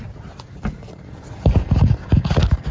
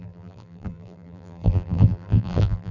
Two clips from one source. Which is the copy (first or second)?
second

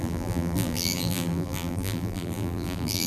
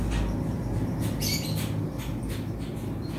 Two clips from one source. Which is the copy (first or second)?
first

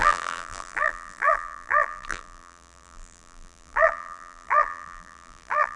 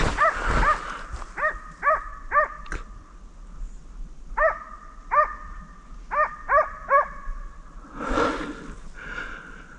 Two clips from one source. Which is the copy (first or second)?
first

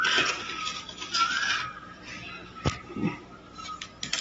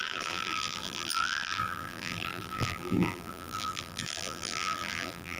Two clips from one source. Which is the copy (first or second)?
second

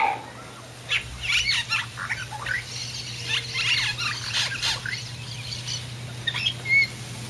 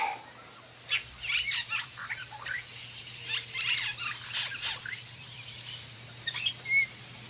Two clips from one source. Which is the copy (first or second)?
second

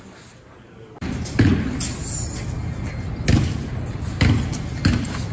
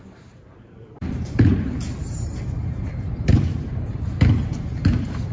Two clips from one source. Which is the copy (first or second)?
second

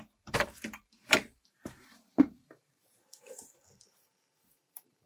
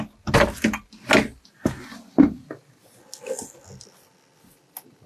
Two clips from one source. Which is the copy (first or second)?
first